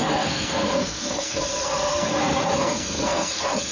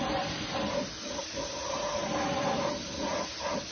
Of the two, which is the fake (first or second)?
first